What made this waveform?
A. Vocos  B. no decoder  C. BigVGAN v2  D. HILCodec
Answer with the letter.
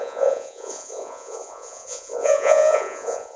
A